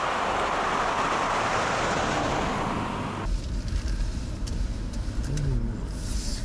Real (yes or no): yes